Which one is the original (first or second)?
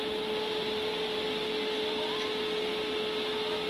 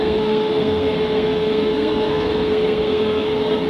first